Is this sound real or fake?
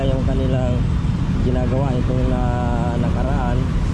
real